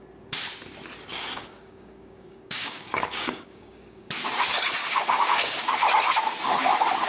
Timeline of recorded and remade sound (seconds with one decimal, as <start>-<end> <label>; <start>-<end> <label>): 0.0-1.1 recorded; 1.1-4.1 remade; 4.1-4.8 recorded; 4.8-5.7 remade; 5.7-7.1 recorded